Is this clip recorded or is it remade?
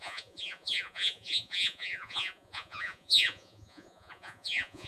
remade